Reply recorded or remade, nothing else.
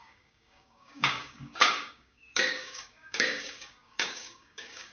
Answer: remade